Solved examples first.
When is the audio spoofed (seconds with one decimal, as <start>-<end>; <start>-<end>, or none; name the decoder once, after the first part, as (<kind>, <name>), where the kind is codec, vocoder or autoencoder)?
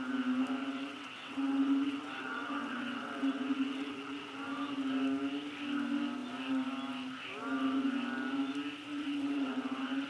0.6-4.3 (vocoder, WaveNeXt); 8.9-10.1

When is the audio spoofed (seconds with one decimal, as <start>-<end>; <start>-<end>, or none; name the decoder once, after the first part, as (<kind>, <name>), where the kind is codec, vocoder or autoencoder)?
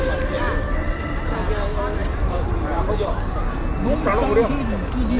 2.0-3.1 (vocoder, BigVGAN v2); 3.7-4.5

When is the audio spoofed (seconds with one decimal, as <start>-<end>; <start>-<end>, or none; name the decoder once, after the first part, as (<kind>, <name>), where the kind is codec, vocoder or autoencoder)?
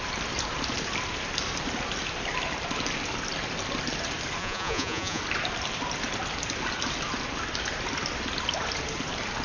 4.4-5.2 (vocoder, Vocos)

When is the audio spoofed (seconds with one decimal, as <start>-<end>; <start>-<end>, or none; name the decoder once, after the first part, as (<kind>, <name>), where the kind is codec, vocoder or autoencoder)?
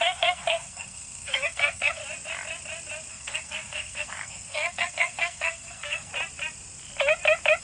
0.0-2.0 (codec, SNAC); 3.1-6.1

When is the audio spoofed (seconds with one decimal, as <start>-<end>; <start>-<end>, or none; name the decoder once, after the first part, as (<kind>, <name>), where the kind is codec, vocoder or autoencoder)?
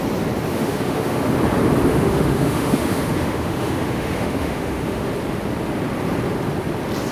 0.5-1.3 (autoencoder, DAC-VAE); 1.9-5.1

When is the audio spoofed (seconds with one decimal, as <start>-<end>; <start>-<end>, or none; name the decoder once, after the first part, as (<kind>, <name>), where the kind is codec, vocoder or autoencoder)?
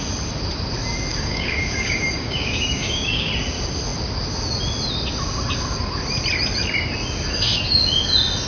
1.1-3.3 (codec, DAC)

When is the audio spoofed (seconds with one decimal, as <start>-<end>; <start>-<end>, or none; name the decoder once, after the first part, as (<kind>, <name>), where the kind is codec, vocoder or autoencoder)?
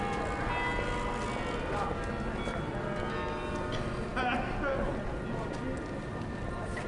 none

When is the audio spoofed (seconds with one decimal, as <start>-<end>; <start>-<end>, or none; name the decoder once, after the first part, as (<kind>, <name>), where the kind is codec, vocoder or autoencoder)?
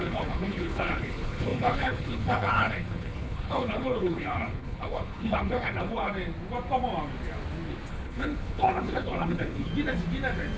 0.0-6.1 (codec, HILCodec); 7.9-9.7